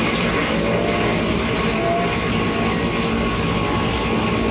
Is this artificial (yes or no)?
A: no